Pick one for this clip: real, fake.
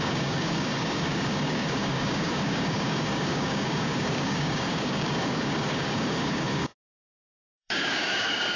fake